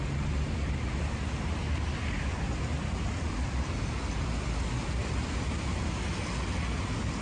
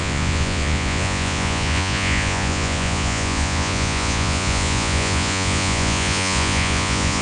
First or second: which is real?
first